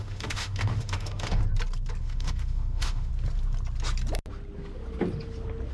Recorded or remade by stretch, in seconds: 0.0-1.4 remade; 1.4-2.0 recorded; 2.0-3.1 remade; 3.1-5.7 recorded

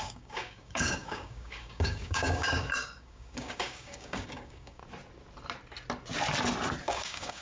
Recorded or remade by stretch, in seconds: 0.0-4.8 remade; 4.8-6.8 recorded; 6.8-7.4 remade

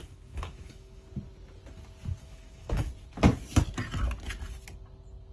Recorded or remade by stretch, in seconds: 0.0-1.1 remade; 1.1-2.2 recorded; 2.2-2.9 remade; 2.9-5.3 recorded